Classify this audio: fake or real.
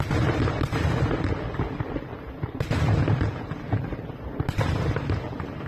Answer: real